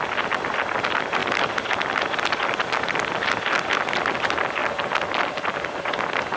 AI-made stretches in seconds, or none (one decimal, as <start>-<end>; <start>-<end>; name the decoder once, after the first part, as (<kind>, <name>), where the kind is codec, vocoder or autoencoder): none